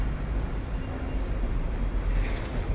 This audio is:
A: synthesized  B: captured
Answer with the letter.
B